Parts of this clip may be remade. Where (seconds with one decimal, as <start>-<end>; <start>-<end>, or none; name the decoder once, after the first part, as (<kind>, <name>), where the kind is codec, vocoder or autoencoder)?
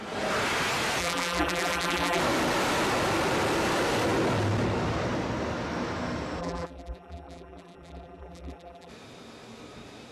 1.0-2.2 (vocoder, BigVGAN v2); 6.4-8.9